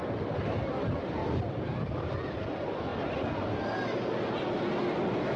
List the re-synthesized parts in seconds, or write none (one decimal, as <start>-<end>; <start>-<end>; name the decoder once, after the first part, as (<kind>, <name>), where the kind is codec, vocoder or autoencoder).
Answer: 0.0-0.6 (vocoder, BigVGAN v2); 1.2-2.1; 2.9-4.3